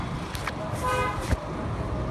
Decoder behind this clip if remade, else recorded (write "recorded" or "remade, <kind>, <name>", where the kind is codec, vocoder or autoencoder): recorded